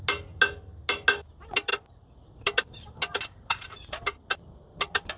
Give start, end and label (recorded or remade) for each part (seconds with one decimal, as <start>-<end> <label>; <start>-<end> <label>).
0.0-5.2 recorded